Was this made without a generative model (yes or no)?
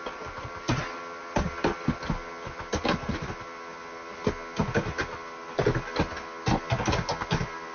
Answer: yes